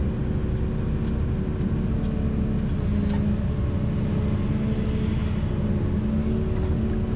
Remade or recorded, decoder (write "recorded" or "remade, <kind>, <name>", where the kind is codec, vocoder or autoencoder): recorded